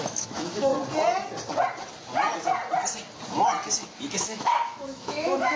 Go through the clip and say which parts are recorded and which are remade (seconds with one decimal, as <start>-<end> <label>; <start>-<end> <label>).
0.0-0.7 remade; 0.7-4.1 recorded; 4.1-5.6 remade